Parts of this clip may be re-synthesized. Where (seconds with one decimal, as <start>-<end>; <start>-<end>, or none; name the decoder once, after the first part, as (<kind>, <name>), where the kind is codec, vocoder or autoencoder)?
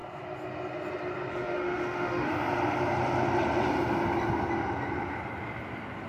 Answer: 1.3-2.3 (autoencoder, DAC-VAE)